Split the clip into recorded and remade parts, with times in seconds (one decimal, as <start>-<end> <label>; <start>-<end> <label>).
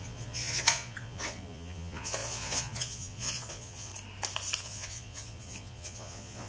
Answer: 0.0-3.9 remade; 3.9-4.6 recorded; 4.6-6.5 remade